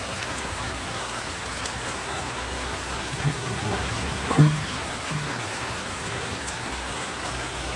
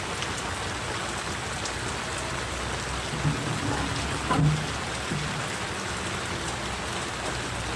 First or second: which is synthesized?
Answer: first